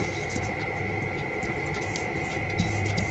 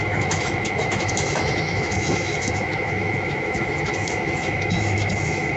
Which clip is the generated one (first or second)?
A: second